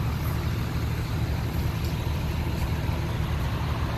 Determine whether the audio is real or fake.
real